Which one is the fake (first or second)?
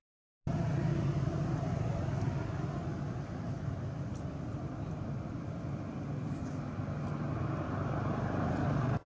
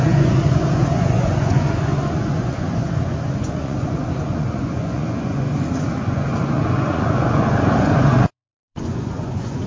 second